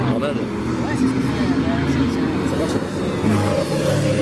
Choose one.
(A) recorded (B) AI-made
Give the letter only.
A